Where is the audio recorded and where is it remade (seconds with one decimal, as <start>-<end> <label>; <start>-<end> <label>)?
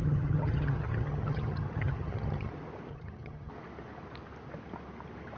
0.0-2.5 remade; 2.5-2.9 recorded; 2.9-3.5 remade; 3.5-5.4 recorded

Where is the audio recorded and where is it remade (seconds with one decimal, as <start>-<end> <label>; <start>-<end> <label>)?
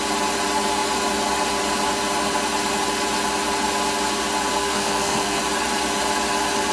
0.0-4.5 recorded; 4.5-5.4 remade; 5.4-6.7 recorded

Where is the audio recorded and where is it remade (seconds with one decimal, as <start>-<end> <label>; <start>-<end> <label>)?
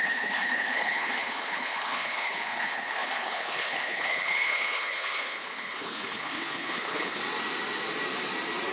0.0-7.2 remade; 7.2-8.7 recorded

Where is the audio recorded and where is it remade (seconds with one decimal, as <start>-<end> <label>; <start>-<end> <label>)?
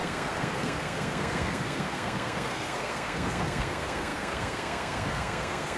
0.0-5.8 remade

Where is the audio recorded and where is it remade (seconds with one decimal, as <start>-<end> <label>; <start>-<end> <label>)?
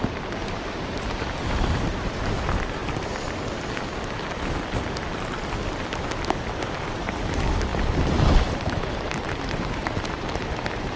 0.0-2.8 remade; 2.8-6.7 recorded; 6.7-11.0 remade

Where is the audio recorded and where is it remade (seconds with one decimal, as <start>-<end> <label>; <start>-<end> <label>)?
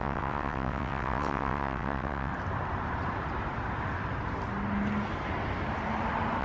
0.0-2.3 remade; 2.3-6.4 recorded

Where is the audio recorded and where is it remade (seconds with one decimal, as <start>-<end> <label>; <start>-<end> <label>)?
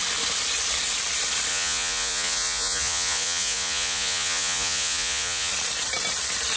0.0-1.5 recorded; 1.5-5.5 remade; 5.5-6.6 recorded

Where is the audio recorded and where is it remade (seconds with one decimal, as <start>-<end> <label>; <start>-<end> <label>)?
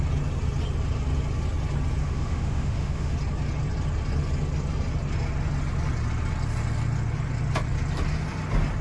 0.0-2.0 recorded; 2.0-3.1 remade; 3.1-8.8 recorded